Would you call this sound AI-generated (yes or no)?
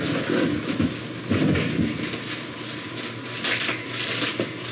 no